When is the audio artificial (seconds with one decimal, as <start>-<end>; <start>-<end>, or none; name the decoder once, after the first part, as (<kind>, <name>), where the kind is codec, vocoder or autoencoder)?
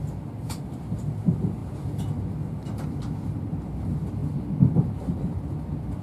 none